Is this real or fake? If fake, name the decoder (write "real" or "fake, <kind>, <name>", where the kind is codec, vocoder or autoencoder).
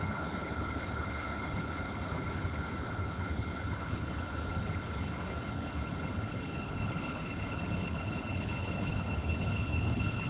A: fake, codec, HILCodec